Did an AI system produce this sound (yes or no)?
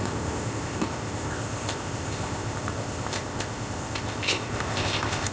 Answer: yes